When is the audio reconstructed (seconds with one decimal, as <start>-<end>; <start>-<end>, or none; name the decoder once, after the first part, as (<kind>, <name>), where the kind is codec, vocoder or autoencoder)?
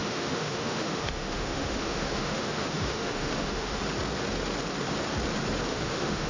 0.0-3.8 (autoencoder, DAC-VAE); 5.7-6.3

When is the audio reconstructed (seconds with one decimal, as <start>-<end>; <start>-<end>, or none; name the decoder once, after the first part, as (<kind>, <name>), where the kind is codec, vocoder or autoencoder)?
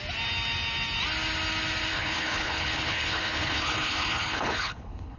1.9-5.2 (codec, HILCodec)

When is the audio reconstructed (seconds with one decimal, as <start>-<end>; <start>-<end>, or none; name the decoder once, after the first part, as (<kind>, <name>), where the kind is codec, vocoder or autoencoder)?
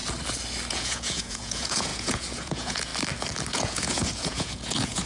0.7-2.9 (vocoder, Vocos); 3.5-5.1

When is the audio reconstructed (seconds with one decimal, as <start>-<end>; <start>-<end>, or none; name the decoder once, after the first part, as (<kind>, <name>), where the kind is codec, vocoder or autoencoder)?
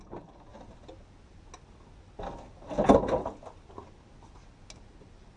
none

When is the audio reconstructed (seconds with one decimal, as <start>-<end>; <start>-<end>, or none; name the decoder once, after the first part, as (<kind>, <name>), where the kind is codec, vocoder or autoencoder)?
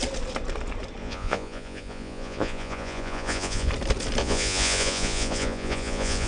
1.0-3.7 (vocoder, Vocos); 4.2-6.3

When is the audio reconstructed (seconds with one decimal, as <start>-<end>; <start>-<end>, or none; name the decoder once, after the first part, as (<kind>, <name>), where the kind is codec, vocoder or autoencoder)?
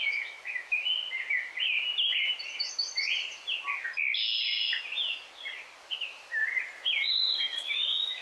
0.0-0.9 (autoencoder, DAC-VAE); 5.8-6.4; 7.1-8.2